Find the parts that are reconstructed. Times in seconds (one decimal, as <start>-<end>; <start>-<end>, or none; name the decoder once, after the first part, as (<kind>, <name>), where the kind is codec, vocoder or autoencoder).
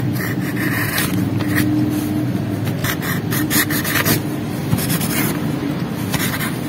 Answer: 2.8-3.5 (vocoder, BigVGAN v2); 4.6-5.9